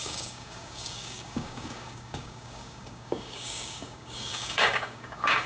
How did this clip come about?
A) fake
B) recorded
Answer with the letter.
A